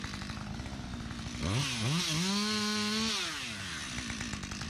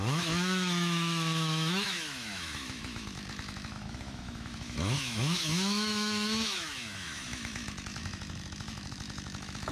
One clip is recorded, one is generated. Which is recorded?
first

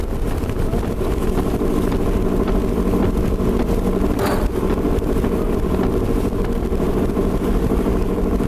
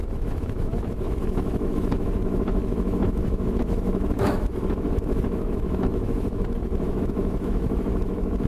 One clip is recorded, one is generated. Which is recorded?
first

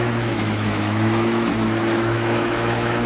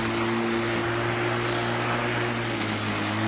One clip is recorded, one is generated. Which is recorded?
second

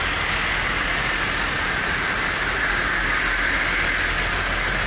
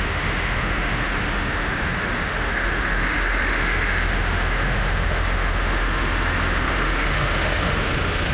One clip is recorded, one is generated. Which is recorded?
first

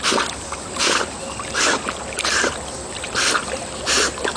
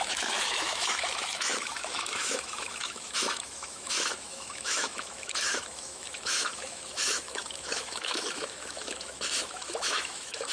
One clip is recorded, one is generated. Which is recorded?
first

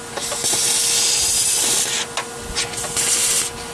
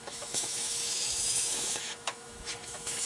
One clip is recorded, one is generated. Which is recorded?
first